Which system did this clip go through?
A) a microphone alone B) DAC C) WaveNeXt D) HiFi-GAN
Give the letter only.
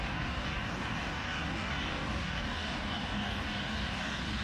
B